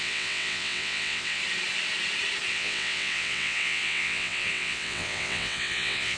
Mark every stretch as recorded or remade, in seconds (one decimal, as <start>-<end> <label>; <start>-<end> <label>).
0.0-1.4 remade; 1.4-2.5 recorded; 2.5-6.2 remade